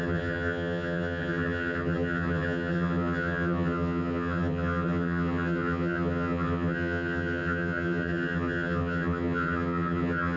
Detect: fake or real fake